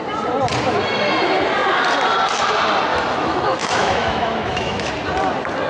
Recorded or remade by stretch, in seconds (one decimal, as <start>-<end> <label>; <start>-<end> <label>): 0.0-2.9 recorded; 2.9-4.9 remade; 4.9-5.7 recorded